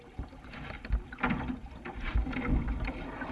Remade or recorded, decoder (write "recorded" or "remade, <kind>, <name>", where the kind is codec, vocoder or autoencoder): remade, vocoder, BigVGAN v2